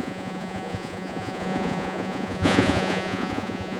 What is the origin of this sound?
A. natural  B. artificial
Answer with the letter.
B